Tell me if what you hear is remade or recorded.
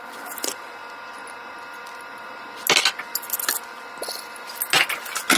recorded